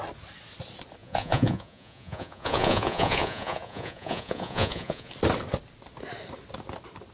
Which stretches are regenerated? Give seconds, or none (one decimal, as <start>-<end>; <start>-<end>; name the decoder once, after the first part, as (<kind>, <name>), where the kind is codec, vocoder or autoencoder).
1.0-5.1 (vocoder, Vocos)